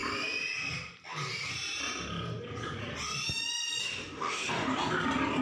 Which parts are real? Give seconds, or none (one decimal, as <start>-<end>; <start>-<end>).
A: 0.0-3.8; 4.7-5.4